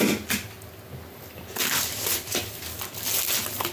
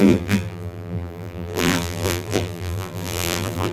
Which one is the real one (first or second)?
first